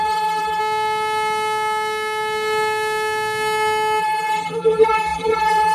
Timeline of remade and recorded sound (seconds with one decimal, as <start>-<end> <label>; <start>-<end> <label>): 0.0-0.6 remade; 0.6-4.0 recorded; 4.0-5.7 remade